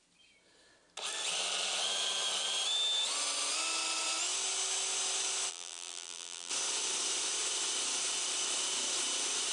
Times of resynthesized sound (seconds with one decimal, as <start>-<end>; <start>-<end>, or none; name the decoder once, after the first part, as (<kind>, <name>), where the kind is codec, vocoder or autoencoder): 5.5-6.5 (vocoder, BigVGAN v2)